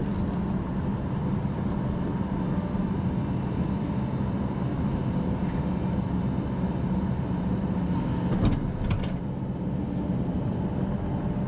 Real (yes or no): yes